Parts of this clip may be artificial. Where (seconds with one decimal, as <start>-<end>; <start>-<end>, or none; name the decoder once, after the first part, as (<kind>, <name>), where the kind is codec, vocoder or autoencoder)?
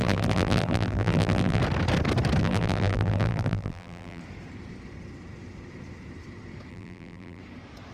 0.0-1.6 (vocoder, BigVGAN v2); 2.4-4.2; 6.7-7.4